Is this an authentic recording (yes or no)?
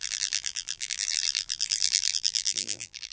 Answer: no